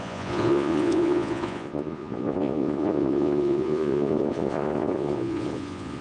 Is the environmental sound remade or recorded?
remade